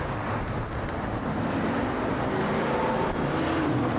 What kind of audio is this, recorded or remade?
remade